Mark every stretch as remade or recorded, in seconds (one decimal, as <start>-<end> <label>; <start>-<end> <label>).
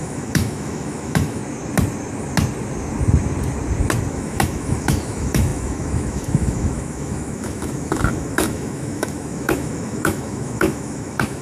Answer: 0.0-1.4 remade; 1.4-4.1 recorded; 4.1-11.4 remade